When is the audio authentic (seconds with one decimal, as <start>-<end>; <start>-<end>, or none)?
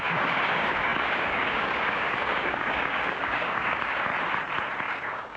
4.1-4.8